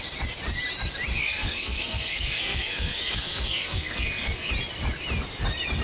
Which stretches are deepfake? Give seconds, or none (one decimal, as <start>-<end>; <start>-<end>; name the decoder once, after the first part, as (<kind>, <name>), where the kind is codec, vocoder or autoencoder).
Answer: 1.2-4.5 (codec, SNAC)

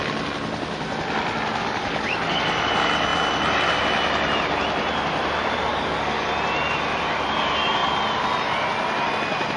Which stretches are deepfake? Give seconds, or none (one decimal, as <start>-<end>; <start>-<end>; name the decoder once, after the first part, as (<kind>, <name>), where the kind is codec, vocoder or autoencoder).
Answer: 1.6-2.4 (codec, DAC); 5.7-6.3